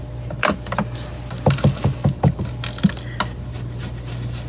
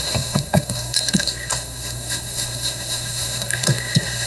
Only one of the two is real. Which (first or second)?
first